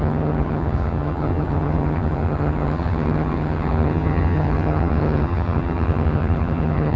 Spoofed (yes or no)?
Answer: yes